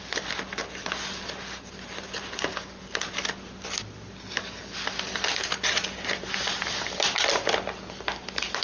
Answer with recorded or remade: recorded